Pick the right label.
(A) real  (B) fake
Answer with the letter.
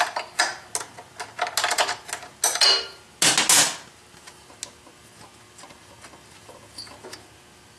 A